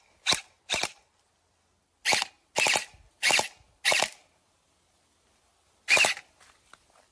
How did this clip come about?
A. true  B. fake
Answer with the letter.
A